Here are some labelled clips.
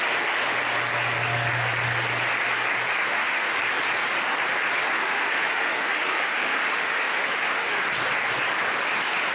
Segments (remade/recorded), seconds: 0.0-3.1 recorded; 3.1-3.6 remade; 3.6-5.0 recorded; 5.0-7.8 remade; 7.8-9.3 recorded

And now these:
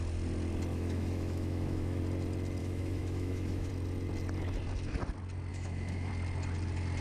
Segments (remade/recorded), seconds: 0.0-0.7 recorded; 0.7-2.0 remade; 2.0-2.6 recorded; 2.6-3.7 remade; 3.7-5.5 recorded; 5.5-6.1 remade; 6.1-7.0 recorded

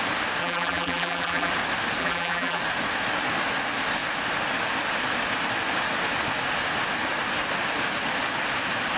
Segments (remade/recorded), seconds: 0.0-0.4 recorded; 0.4-1.5 remade; 1.5-2.0 recorded; 2.0-2.6 remade; 2.6-9.0 recorded